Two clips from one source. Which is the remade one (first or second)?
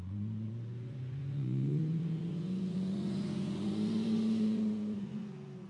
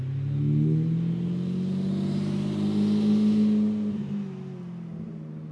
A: first